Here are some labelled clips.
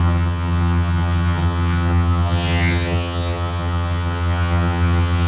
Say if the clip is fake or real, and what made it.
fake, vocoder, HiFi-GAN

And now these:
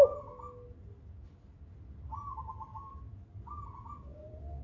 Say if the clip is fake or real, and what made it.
real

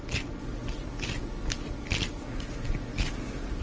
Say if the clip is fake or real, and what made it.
real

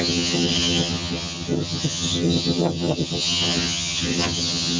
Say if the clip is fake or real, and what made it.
fake, vocoder, HiFi-GAN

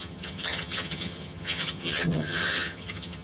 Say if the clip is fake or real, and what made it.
fake, vocoder, HiFi-GAN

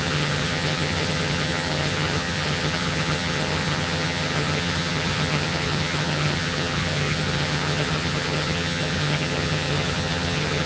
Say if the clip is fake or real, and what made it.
fake, vocoder, HiFi-GAN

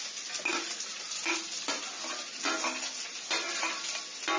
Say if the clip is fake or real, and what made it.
real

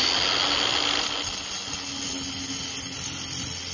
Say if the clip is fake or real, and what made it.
real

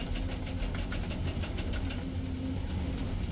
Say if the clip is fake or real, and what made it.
real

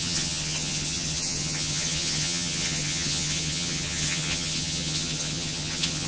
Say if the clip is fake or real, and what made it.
fake, vocoder, HiFi-GAN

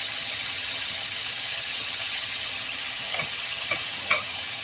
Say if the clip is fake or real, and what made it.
fake, vocoder, HiFi-GAN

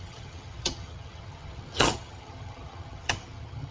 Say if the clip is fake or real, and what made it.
fake, vocoder, HiFi-GAN